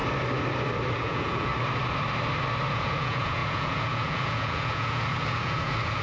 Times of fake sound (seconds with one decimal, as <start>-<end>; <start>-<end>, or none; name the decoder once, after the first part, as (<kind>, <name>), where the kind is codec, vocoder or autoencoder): 1.0-1.5 (vocoder, Vocos); 2.7-6.0